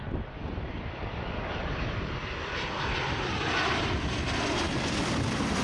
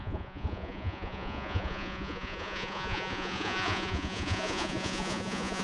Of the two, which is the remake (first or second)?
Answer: second